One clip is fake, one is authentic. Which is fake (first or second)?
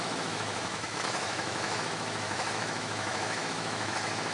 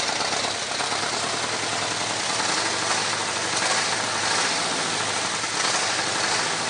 first